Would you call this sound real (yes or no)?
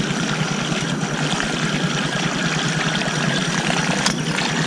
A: yes